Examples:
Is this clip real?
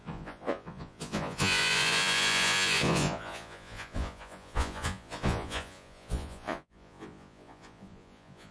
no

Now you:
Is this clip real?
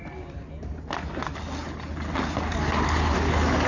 yes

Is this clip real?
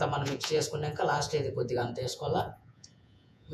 no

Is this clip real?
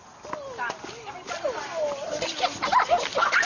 yes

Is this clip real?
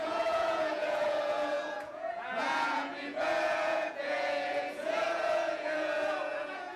no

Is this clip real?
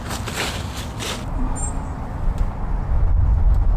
yes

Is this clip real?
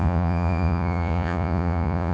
no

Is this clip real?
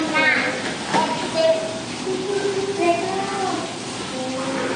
yes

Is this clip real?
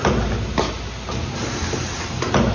yes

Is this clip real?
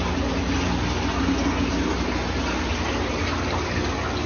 yes